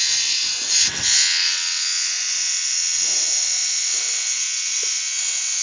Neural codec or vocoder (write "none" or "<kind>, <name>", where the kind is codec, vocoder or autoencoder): vocoder, WaveNeXt